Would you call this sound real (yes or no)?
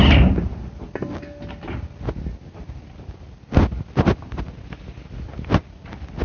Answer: yes